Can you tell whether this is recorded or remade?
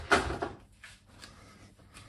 remade